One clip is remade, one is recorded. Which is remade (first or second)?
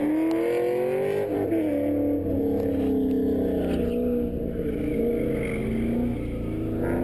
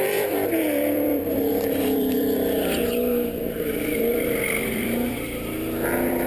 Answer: second